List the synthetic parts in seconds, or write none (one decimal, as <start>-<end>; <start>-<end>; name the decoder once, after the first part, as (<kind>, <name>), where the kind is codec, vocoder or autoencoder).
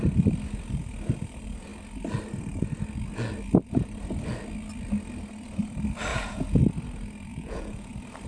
6.1-6.6 (vocoder, Vocos); 7.3-7.9